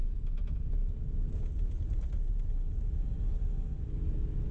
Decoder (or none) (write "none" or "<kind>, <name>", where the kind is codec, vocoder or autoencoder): none